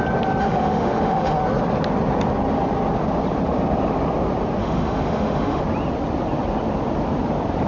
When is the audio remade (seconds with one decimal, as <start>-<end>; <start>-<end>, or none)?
0.4-1.4; 4.6-5.6